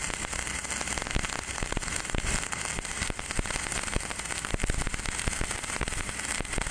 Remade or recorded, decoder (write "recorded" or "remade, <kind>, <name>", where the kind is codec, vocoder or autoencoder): recorded